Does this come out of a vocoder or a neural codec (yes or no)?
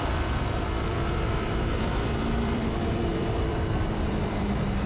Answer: yes